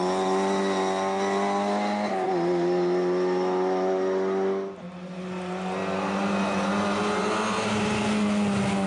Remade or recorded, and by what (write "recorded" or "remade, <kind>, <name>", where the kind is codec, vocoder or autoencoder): recorded